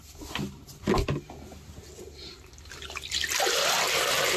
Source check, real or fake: real